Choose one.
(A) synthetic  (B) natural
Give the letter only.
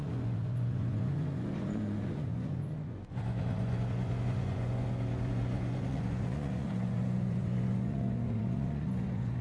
A